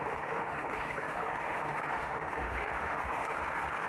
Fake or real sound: fake